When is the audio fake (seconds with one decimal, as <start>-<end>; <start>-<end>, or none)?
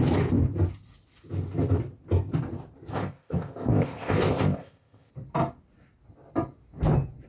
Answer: 2.9-5.1